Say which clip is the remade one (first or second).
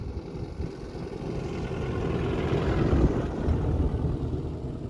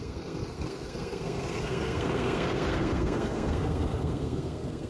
second